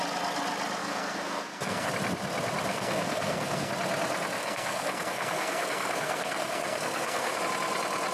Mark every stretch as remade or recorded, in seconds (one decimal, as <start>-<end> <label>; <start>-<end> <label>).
0.0-0.8 recorded; 0.8-1.9 remade; 1.9-2.7 recorded; 2.7-3.7 remade; 3.7-4.4 recorded; 4.4-7.4 remade; 7.4-8.1 recorded

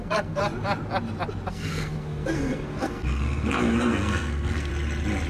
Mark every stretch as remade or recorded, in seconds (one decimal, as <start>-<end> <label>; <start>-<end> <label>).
0.0-0.4 remade; 0.4-1.5 recorded; 1.5-4.7 remade; 4.7-5.3 recorded

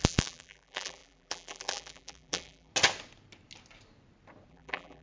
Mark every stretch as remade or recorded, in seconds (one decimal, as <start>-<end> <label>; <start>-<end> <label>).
0.0-2.7 remade; 2.7-4.5 recorded; 4.5-5.0 remade

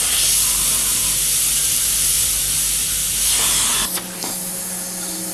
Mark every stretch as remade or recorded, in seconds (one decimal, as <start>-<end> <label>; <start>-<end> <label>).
0.0-5.3 recorded